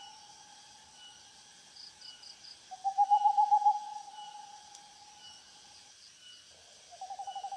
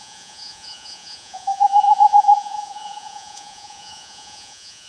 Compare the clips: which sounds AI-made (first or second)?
second